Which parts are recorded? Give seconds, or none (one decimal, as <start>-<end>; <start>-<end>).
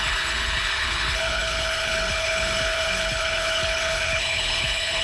none